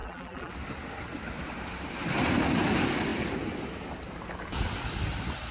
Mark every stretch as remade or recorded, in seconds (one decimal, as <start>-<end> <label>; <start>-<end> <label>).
0.0-0.5 remade; 0.5-5.5 recorded